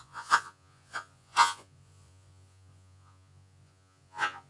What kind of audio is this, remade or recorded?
remade